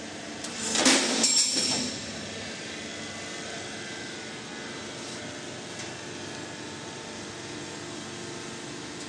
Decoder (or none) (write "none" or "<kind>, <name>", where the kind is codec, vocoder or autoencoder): none